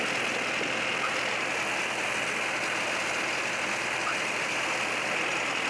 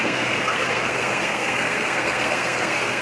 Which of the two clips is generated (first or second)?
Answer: second